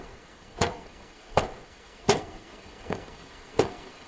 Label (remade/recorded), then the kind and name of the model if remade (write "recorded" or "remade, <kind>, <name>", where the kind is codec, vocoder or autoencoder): remade, codec, SNAC